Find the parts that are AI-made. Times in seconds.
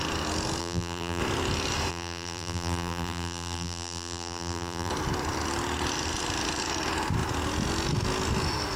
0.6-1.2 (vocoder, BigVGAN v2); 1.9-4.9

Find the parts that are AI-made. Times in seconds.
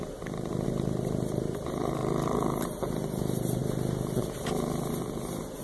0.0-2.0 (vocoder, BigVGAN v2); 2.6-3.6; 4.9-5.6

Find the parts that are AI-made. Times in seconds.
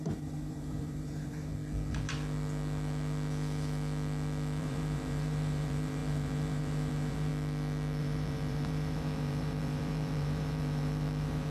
0.0-1.5 (vocoder, BigVGAN v2); 4.6-7.3; 8.0-11.5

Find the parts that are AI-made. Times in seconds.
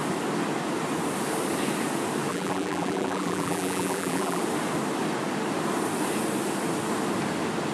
2.3-4.4 (vocoder, BigVGAN v2)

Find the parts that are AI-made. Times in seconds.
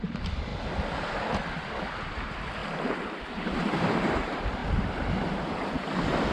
0.0-0.5 (vocoder, BigVGAN v2); 2.1-2.6; 3.3-4.6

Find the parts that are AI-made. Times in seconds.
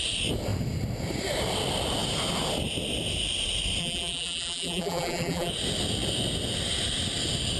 3.8-5.5 (vocoder, BigVGAN v2)